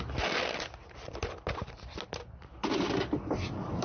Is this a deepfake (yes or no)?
no